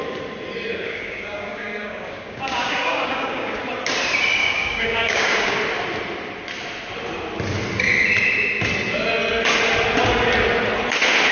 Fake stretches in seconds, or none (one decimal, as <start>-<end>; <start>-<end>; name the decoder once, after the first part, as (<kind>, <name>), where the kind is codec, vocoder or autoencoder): 0.7-3.6 (codec, DAC); 4.4-5.6